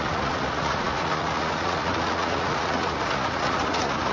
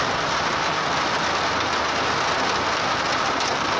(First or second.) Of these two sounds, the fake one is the first